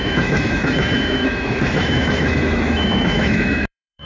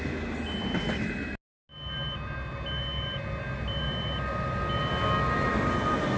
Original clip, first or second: second